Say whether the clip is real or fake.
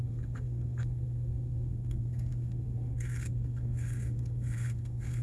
fake